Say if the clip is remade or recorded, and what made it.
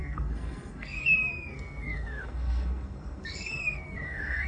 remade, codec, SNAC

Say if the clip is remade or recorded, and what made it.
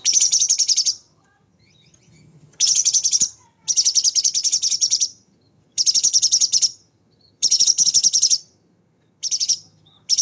remade, vocoder, HiFi-GAN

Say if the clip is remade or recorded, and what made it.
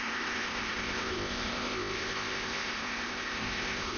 remade, codec, ZipCodec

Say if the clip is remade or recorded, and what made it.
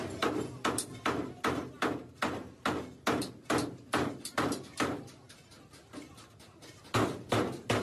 recorded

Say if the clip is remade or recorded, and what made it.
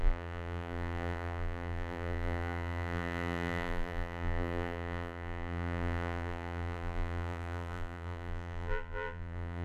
remade, vocoder, BigVGAN v2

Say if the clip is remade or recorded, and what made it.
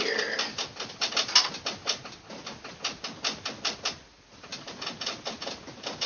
recorded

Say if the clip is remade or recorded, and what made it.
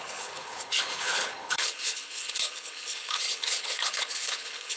remade, codec, HILCodec